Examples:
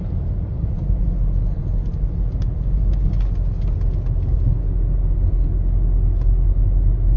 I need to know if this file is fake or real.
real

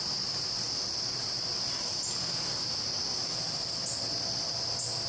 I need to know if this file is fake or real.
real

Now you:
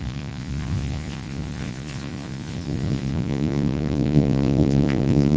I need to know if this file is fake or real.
fake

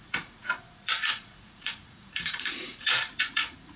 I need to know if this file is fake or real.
fake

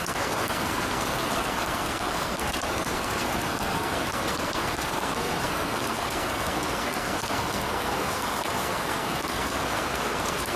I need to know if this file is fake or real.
fake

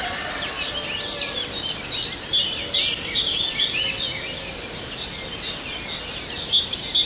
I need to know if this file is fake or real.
real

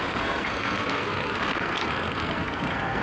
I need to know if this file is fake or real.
fake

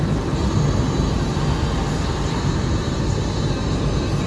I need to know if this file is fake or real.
real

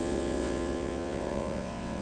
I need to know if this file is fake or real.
fake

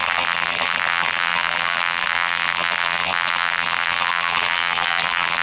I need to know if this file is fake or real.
fake